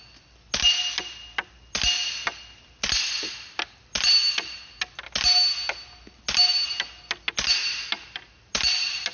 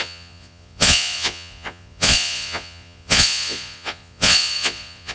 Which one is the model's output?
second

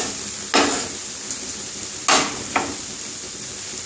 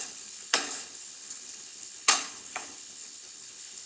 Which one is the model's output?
second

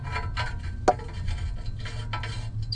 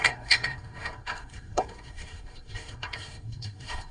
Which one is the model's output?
second